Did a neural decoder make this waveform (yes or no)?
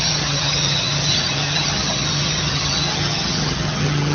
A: yes